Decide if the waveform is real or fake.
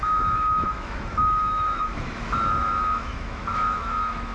fake